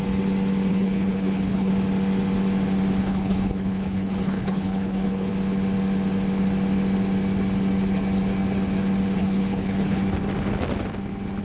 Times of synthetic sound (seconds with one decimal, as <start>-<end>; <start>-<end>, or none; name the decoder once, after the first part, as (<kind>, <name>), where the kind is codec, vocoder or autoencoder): 0.7-1.7 (codec, HILCodec); 3.0-5.3; 9.2-10.0